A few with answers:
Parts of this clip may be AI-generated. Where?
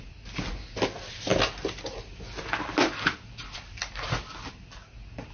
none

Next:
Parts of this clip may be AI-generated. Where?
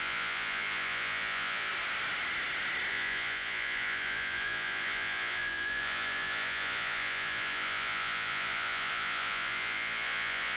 0.0-1.7 (vocoder, Vocos); 2.9-10.6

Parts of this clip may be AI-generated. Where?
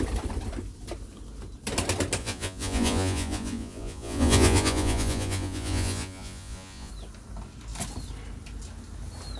2.2-6.9 (vocoder, Vocos)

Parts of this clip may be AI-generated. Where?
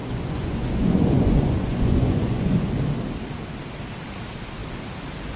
0.0-2.7 (vocoder, Vocos)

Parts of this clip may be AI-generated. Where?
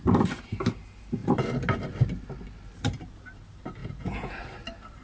3.8-4.4 (vocoder, Vocos)